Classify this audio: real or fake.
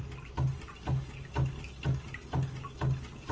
real